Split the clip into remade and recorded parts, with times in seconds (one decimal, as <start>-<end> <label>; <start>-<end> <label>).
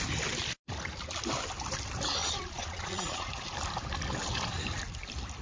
0.0-2.2 recorded; 2.2-3.3 remade; 3.3-5.4 recorded